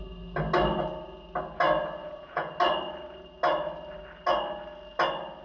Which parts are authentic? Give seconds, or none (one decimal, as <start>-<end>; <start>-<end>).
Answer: 0.0-2.0; 2.5-5.4